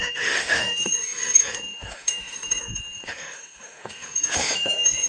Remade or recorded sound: remade